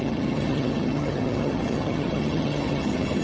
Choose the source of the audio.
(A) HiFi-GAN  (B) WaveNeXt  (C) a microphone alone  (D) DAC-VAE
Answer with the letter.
A